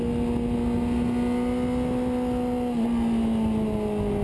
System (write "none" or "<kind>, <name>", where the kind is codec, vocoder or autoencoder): none